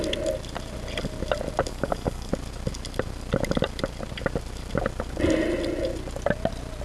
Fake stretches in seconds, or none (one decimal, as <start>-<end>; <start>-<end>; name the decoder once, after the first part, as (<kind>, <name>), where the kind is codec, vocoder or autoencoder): 1.7-2.3 (codec, DAC)